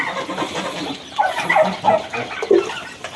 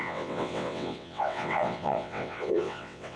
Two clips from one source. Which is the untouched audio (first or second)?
first